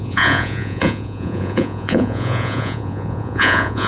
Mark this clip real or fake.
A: fake